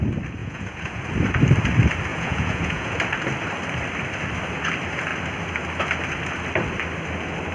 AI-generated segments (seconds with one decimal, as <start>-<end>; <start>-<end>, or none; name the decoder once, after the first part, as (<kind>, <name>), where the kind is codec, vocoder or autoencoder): 0.4-1.0 (vocoder, Vocos); 2.1-3.0